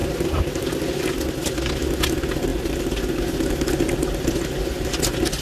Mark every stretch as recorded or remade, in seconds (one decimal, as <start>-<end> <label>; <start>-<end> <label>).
0.0-5.4 recorded